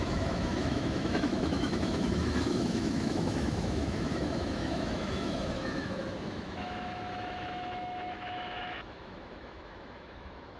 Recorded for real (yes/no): no